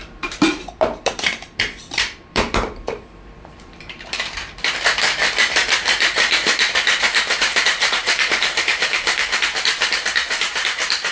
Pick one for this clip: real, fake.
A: fake